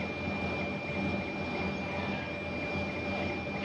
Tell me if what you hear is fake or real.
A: real